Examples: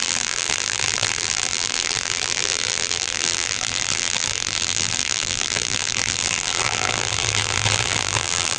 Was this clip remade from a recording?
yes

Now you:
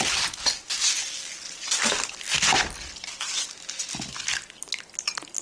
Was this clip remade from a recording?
no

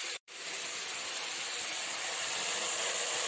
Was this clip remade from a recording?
yes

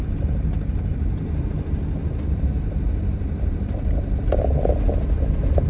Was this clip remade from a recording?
no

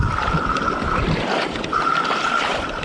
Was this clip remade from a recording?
yes